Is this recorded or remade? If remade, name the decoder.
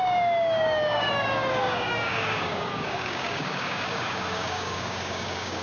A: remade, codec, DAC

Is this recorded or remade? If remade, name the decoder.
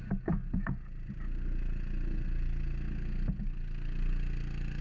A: recorded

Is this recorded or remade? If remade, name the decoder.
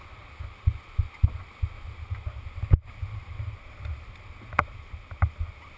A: recorded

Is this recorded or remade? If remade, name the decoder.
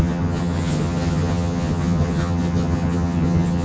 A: remade, vocoder, HiFi-GAN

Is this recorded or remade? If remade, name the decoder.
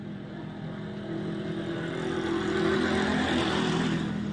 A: recorded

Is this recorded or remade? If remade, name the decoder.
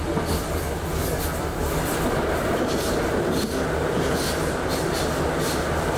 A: recorded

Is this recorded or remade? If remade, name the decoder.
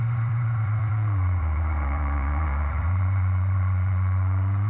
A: remade, vocoder, Vocos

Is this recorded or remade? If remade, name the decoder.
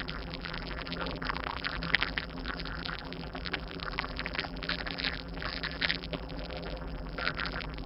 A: remade, vocoder, BigVGAN v2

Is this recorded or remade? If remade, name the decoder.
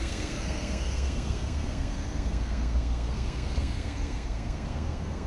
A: remade, codec, SNAC